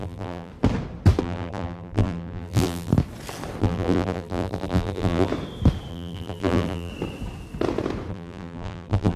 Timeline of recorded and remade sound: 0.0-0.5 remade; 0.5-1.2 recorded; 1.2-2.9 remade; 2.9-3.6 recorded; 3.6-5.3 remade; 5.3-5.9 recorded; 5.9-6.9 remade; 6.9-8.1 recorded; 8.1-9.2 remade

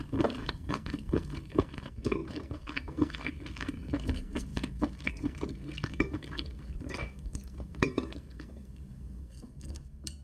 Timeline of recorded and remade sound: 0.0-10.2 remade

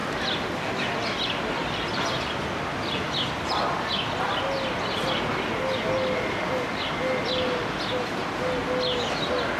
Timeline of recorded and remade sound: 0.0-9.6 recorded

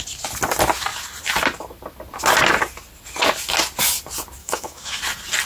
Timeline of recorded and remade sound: 0.0-4.4 recorded; 4.4-5.0 remade; 5.0-5.5 recorded

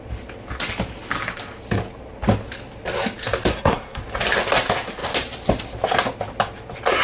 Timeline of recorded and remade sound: 0.0-3.5 recorded; 3.5-4.0 remade; 4.0-7.0 recorded

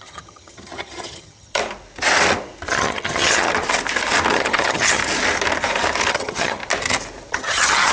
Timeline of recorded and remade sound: 0.0-1.6 remade; 1.6-2.7 recorded; 2.7-3.5 remade; 3.5-4.3 recorded; 4.3-5.0 remade; 5.0-6.1 recorded; 6.1-6.6 remade; 6.6-7.3 recorded; 7.3-7.9 remade

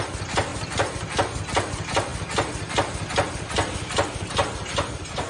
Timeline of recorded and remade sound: 0.0-5.3 recorded

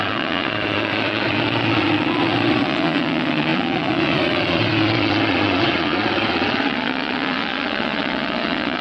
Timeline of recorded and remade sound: 0.0-8.8 remade